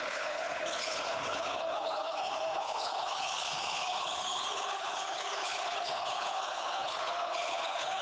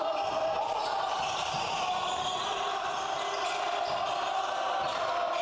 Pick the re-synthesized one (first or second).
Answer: first